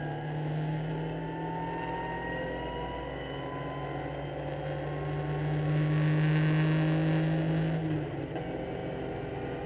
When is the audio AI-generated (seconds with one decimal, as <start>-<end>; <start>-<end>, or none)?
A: none